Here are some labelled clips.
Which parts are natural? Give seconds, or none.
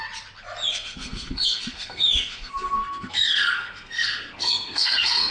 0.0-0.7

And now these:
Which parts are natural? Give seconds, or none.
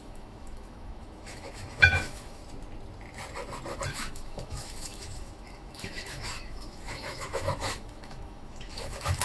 2.4-3.9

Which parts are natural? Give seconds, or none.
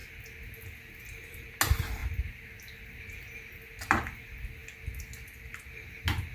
0.0-6.3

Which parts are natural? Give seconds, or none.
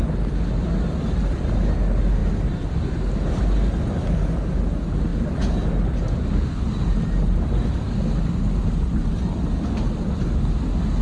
0.0-6.9; 7.5-8.6; 9.2-11.0